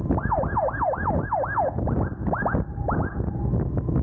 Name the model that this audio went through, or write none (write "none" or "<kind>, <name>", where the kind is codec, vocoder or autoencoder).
none